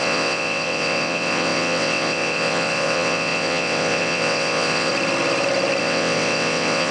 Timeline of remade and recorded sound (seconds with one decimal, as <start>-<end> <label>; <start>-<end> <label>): 0.0-4.9 remade; 4.9-5.8 recorded; 5.8-6.9 remade